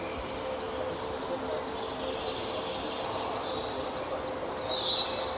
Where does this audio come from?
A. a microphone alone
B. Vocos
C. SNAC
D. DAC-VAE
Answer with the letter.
A